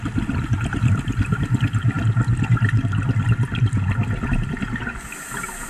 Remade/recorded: recorded